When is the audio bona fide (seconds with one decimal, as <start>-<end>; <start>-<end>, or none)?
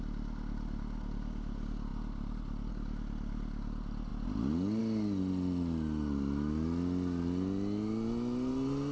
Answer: 0.0-8.9